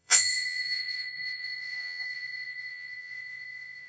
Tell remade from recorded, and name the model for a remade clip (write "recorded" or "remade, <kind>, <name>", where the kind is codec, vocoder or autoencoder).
remade, vocoder, Vocos